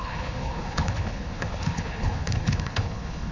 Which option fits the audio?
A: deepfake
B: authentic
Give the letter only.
A